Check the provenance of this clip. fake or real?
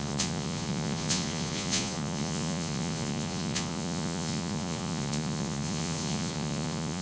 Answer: fake